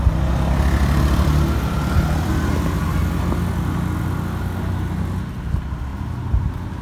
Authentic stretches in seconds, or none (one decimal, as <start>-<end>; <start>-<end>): 0.0-0.8; 2.3-6.8